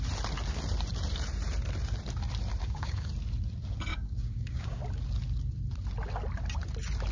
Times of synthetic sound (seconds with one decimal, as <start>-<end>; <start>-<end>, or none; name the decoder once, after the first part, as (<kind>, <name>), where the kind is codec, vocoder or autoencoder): 2.6-3.1 (codec, DAC); 3.9-4.8